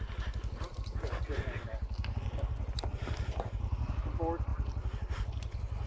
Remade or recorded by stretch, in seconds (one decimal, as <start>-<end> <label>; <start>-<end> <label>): 0.0-5.9 recorded